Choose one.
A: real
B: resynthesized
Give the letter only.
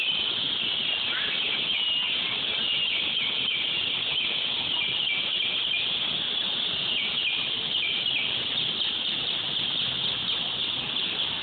A